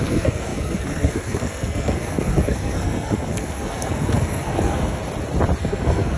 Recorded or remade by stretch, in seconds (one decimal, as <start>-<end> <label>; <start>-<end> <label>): 0.0-5.0 remade; 5.0-5.6 recorded; 5.6-6.2 remade

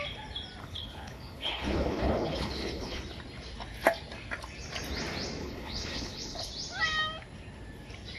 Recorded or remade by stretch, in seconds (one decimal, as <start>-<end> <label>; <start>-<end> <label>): 0.0-0.6 recorded; 0.6-3.0 remade; 3.0-5.4 recorded; 5.4-6.5 remade; 6.5-8.2 recorded

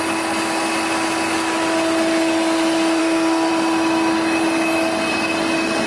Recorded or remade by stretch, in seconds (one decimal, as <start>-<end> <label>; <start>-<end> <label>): 0.0-3.0 recorded; 3.0-3.5 remade; 3.5-5.9 recorded

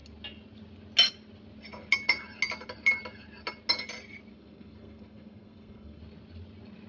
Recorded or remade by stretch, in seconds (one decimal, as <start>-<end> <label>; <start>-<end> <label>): 0.0-4.3 recorded; 4.3-6.0 remade; 6.0-6.9 recorded

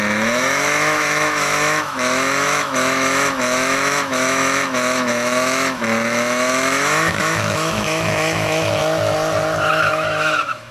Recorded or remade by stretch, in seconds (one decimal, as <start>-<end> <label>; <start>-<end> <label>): 0.0-8.8 remade; 8.8-9.7 recorded; 9.7-10.7 remade